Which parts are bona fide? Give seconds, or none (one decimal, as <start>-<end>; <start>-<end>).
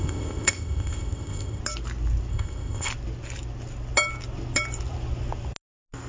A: 1.6-2.3; 2.9-6.1